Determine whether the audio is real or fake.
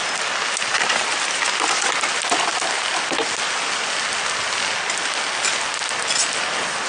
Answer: real